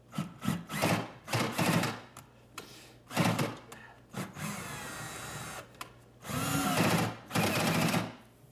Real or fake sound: real